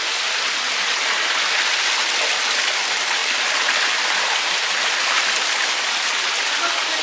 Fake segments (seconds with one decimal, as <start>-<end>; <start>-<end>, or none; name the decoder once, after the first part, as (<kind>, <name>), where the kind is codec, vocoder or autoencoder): 3.2-5.7 (vocoder, BigVGAN v2)